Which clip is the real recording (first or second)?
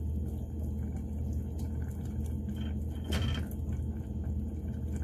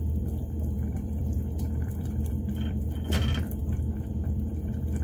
first